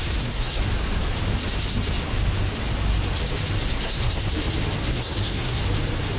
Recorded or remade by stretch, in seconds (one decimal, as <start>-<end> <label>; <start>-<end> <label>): 0.0-0.6 remade; 0.6-3.7 recorded; 3.7-4.2 remade; 4.2-4.8 recorded; 4.8-5.6 remade; 5.6-6.2 recorded